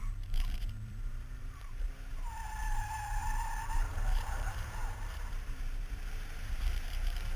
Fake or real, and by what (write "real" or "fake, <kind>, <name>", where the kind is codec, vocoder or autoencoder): fake, vocoder, BigVGAN v2